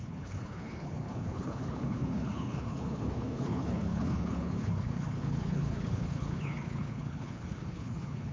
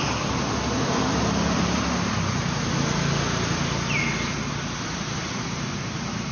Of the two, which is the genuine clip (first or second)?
second